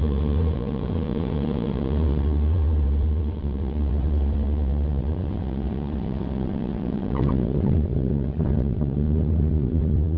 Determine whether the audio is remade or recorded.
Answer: remade